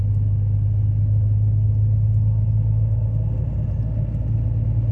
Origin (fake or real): real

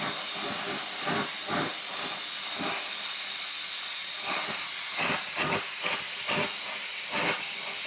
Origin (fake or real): real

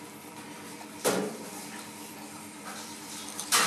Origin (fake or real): fake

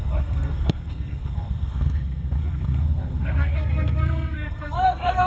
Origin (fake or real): fake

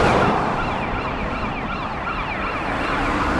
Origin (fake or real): real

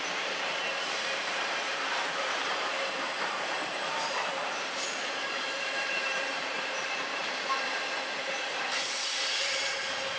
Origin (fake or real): fake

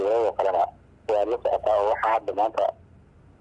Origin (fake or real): real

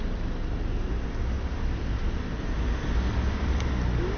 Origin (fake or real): real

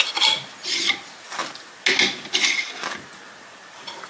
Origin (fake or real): real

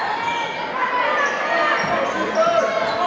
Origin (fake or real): real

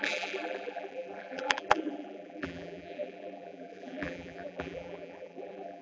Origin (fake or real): fake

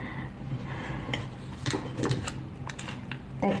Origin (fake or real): real